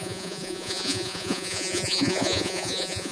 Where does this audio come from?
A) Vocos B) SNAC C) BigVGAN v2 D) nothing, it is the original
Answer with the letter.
A